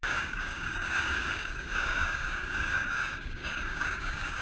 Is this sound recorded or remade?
remade